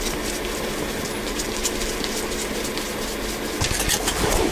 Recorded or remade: recorded